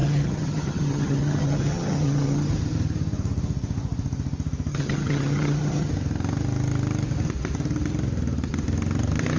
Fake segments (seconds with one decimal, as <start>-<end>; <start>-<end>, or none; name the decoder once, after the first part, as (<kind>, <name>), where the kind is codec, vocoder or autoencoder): 0.0-2.5 (vocoder, HiFi-GAN); 4.7-5.9